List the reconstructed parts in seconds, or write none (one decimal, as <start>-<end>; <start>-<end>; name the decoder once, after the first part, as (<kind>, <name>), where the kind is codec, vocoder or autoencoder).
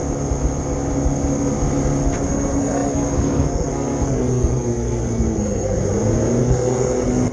2.3-5.9 (codec, SNAC); 6.4-7.3